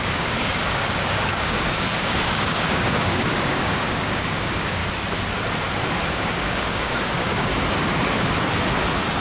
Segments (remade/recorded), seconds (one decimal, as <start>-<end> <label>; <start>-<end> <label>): 0.0-4.8 remade; 4.8-6.1 recorded; 6.1-7.5 remade; 7.5-9.2 recorded